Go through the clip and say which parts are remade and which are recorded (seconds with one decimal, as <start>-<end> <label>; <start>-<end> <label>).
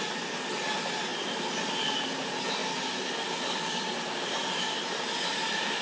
0.0-5.8 recorded